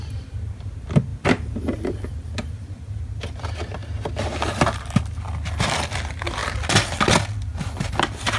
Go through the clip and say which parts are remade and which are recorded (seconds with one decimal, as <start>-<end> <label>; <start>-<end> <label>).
0.0-8.4 recorded